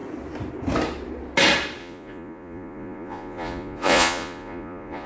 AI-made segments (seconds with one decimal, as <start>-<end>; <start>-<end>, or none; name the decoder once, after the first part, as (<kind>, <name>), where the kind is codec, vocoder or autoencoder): 1.8-5.1 (vocoder, Vocos)